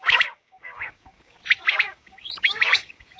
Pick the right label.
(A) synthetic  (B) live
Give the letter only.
A